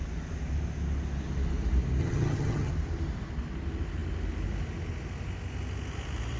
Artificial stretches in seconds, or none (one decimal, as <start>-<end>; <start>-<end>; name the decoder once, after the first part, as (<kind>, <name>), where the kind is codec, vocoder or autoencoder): 2.0-2.7 (vocoder, HiFi-GAN)